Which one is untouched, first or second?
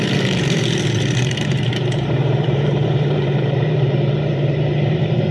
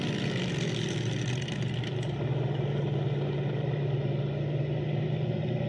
second